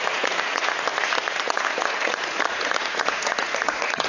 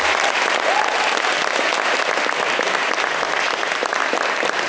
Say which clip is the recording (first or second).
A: second